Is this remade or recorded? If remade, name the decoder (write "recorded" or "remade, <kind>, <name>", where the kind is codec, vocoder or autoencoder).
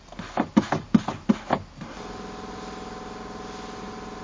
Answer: recorded